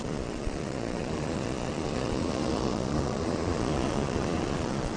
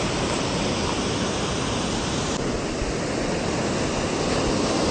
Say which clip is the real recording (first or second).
second